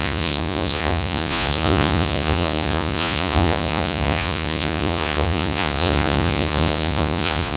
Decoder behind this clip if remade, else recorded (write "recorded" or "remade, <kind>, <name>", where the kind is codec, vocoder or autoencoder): remade, vocoder, Vocos